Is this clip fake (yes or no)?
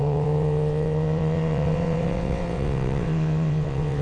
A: yes